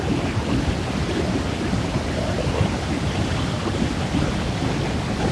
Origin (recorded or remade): recorded